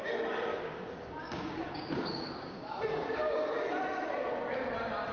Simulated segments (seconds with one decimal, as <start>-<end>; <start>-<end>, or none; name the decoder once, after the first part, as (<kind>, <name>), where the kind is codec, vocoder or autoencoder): 0.5-3.6 (codec, DAC)